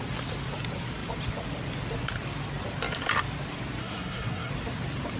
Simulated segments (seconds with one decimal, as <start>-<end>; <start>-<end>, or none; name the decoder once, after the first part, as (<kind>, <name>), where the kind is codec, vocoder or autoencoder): 3.8-4.5 (codec, SNAC)